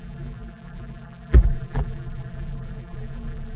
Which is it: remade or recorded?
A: remade